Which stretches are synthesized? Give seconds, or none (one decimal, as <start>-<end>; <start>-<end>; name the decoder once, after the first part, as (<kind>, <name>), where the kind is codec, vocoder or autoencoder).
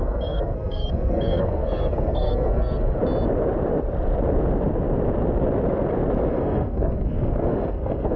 0.0-3.0 (codec, SNAC); 6.3-8.2